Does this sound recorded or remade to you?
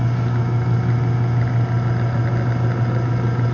recorded